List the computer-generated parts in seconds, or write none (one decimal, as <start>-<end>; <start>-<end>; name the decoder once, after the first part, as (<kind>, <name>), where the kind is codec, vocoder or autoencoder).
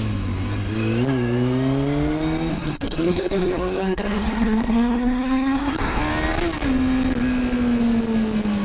2.5-6.0 (codec, SNAC)